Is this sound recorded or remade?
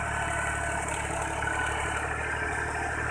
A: recorded